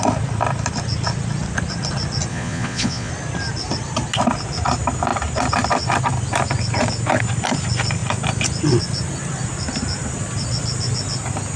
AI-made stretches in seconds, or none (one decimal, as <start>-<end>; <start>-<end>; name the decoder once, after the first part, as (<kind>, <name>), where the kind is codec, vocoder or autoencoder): 2.3-3.1 (vocoder, Vocos)